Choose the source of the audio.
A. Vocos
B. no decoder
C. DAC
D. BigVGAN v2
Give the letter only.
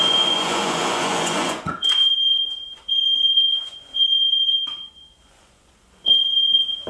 A